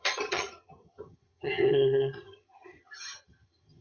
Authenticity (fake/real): fake